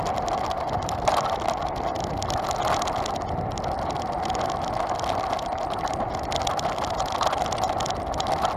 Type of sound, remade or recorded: recorded